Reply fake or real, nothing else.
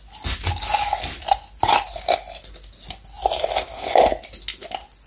real